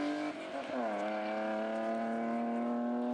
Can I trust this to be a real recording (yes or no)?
yes